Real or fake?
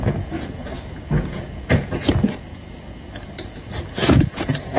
fake